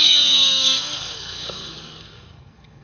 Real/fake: fake